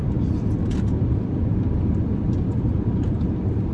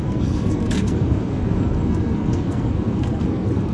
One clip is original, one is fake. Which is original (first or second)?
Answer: first